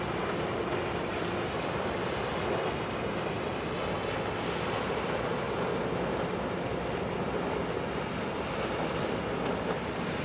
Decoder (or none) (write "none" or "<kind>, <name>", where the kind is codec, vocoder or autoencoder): none